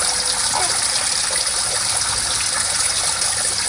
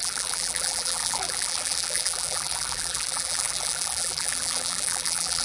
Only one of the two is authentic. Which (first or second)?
first